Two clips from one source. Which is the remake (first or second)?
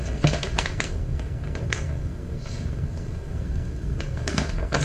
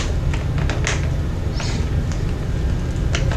first